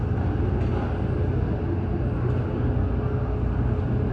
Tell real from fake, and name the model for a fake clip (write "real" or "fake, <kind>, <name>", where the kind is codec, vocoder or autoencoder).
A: real